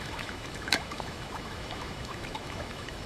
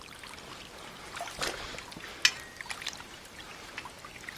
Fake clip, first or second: first